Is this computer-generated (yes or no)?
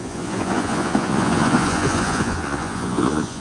yes